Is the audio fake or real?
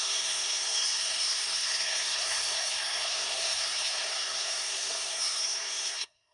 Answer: fake